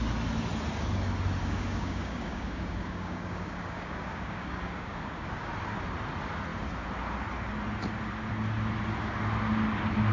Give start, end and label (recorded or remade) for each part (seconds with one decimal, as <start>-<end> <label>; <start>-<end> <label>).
0.0-1.4 recorded; 1.4-5.5 remade; 5.5-10.1 recorded